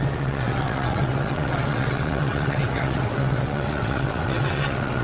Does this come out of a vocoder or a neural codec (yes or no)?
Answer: yes